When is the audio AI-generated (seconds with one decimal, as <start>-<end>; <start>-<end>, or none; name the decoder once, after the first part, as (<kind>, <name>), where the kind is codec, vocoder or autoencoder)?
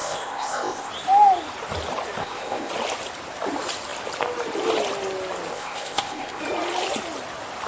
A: 0.0-0.9 (codec, ZipCodec); 2.2-2.7; 5.5-6.4